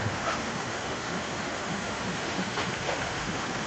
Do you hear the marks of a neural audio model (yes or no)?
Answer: yes